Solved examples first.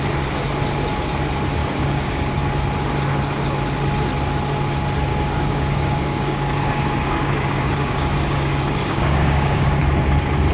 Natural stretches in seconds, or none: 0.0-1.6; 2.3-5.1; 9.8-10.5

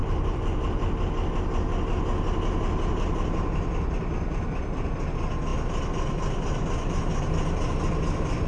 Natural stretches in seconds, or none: 1.1-8.5

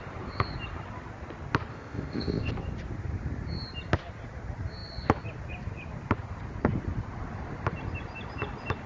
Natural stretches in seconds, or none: 0.0-1.7; 2.5-8.9

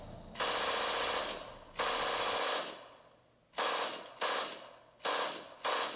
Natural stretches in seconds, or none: 0.0-6.0

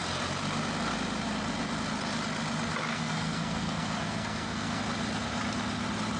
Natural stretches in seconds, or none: 0.0-2.9; 4.8-6.2

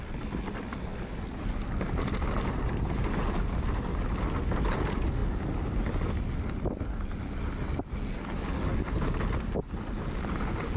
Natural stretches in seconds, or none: 0.0-0.9; 2.1-8.7; 9.5-10.8

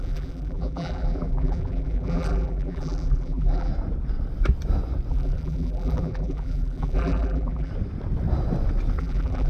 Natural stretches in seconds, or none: 3.7-5.1; 7.7-9.0